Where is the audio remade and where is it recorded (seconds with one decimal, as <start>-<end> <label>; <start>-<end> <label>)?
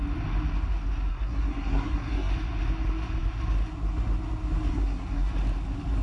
0.0-1.1 recorded; 1.1-2.3 remade; 2.3-4.7 recorded; 4.7-5.3 remade; 5.3-6.0 recorded